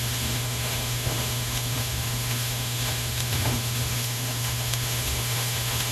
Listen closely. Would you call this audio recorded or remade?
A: remade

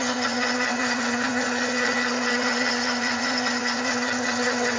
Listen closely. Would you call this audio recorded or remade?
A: remade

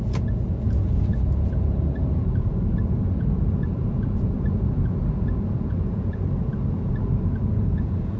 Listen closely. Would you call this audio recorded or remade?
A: remade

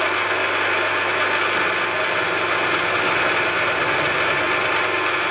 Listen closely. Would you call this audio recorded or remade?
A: recorded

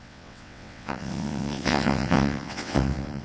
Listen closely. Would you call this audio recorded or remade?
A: remade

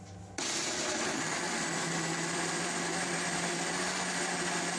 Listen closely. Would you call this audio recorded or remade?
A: recorded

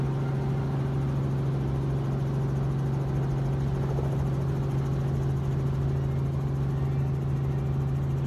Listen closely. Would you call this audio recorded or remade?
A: recorded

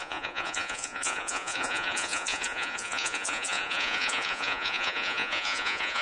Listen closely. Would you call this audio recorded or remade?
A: remade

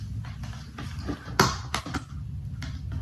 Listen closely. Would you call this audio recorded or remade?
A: recorded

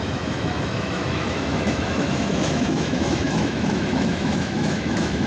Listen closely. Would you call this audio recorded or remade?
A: remade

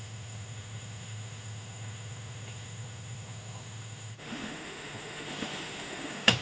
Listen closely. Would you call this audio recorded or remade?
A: remade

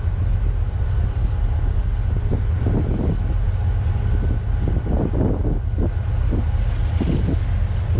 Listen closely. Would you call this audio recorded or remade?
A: recorded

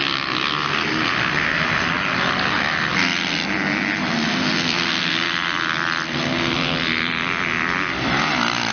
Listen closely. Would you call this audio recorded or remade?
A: recorded